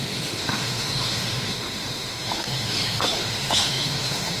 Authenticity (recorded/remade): remade